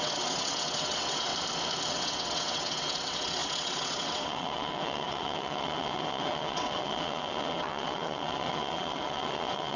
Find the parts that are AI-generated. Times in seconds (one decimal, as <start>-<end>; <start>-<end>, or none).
0.0-1.3; 1.9-9.8